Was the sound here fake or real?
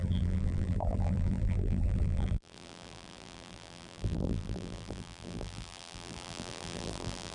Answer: fake